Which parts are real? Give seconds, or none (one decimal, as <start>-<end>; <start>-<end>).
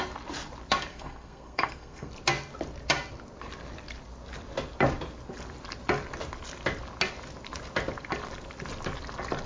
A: 0.0-0.9; 2.1-9.5